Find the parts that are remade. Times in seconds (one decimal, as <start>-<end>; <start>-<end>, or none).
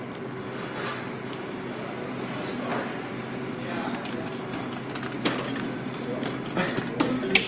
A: none